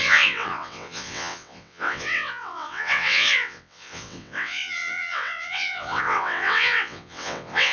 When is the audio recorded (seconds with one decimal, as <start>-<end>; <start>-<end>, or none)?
none